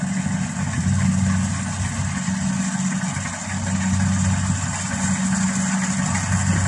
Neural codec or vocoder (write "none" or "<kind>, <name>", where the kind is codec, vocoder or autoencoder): none